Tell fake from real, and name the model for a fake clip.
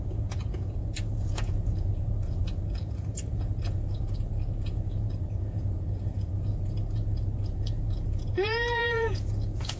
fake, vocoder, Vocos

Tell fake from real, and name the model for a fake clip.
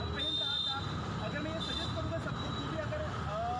real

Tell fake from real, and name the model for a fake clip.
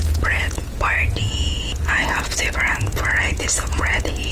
fake, vocoder, Vocos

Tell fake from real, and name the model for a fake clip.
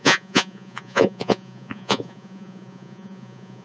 fake, vocoder, Vocos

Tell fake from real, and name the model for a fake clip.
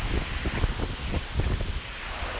real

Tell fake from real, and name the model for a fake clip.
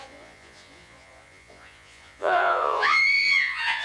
fake, vocoder, Vocos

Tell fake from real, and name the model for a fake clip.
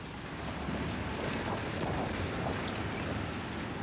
real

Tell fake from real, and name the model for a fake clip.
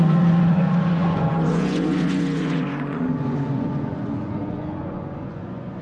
fake, vocoder, Vocos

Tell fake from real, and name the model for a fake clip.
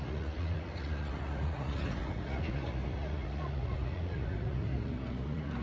fake, vocoder, Vocos